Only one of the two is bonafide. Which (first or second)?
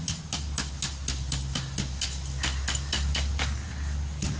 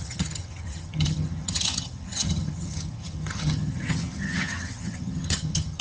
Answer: first